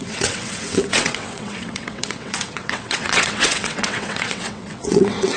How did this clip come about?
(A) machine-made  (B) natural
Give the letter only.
A